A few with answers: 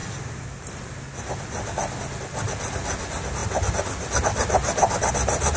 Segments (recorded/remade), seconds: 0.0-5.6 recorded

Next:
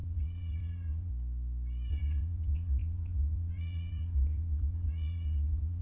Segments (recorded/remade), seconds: 0.0-1.1 remade; 1.1-1.9 recorded; 1.9-5.8 remade

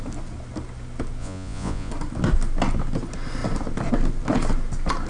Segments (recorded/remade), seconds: 0.0-1.2 recorded; 1.2-1.9 remade; 1.9-5.1 recorded